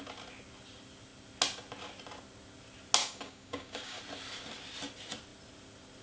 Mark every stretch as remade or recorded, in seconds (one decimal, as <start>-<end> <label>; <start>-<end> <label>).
0.0-3.0 recorded; 3.0-4.0 remade; 4.0-6.0 recorded